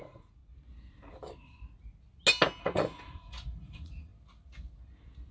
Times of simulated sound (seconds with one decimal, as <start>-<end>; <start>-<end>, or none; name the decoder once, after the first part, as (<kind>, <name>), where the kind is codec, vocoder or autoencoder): 0.0-0.4 (vocoder, Vocos); 2.6-4.1